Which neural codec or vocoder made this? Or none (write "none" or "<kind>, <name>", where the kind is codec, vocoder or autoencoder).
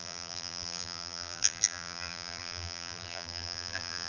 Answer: vocoder, BigVGAN v2